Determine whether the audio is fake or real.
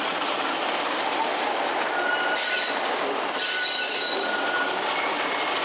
real